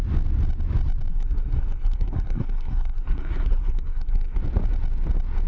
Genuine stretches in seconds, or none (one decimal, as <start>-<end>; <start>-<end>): 0.0-1.1; 4.4-5.5